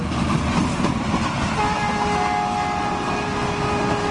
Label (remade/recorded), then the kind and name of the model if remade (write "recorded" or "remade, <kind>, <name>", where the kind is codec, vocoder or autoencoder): recorded